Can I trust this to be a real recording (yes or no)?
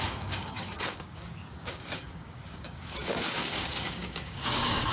no